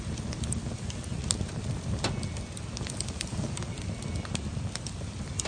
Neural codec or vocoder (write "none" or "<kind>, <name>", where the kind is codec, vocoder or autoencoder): none